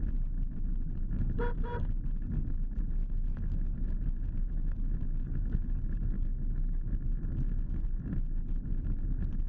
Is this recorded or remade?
recorded